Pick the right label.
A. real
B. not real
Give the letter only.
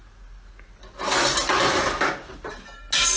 A